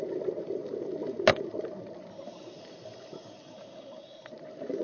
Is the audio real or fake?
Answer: real